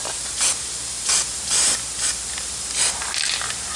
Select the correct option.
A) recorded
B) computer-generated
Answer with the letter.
A